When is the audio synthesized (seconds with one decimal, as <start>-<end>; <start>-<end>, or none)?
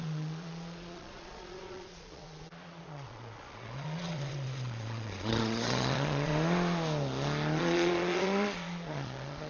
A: 0.0-6.3; 7.6-9.5